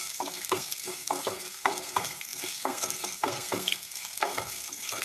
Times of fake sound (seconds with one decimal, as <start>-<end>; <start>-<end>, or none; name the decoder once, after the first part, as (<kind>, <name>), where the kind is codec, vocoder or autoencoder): 0.0-5.0 (codec, SNAC)